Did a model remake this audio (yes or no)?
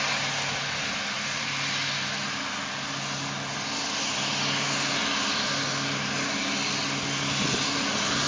no